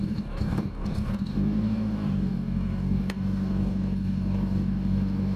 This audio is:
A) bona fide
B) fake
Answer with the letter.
B